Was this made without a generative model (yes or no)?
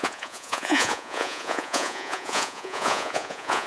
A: no